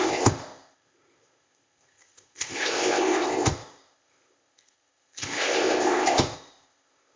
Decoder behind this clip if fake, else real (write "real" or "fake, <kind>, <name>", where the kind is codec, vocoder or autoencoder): fake, codec, ZipCodec